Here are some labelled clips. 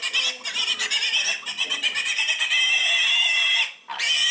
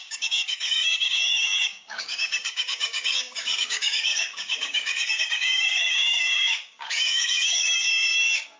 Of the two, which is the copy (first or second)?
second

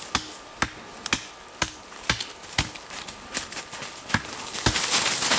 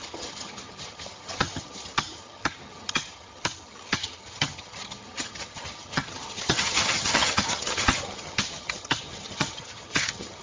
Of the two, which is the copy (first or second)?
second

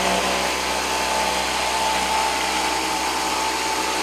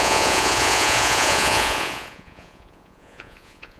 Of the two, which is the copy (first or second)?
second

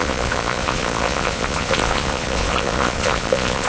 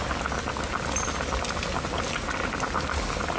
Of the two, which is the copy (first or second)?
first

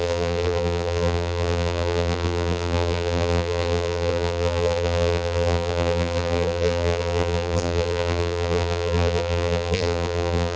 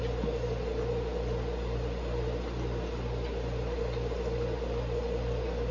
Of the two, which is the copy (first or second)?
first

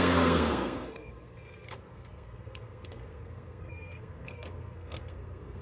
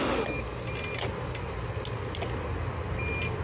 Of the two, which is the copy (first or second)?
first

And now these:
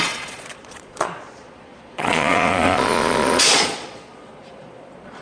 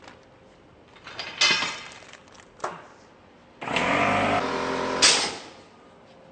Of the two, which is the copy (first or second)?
first